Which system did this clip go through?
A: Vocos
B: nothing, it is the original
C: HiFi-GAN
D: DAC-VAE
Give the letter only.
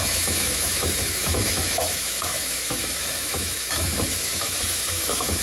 D